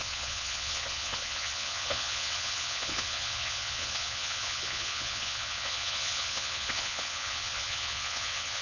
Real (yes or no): no